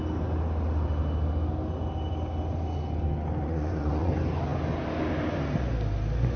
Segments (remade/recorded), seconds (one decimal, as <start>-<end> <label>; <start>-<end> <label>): 0.0-3.4 recorded; 3.4-4.1 remade; 4.1-6.4 recorded